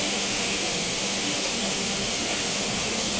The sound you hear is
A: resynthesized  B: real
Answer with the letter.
A